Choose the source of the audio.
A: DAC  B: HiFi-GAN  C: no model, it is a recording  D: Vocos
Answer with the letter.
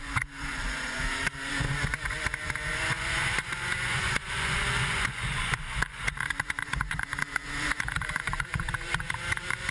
D